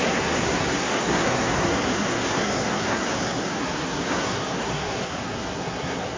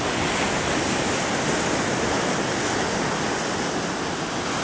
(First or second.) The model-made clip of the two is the first